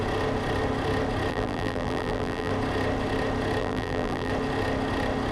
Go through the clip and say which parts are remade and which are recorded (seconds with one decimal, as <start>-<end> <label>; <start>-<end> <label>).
0.0-1.3 recorded; 1.3-2.5 remade; 2.5-3.6 recorded; 3.6-4.3 remade; 4.3-5.3 recorded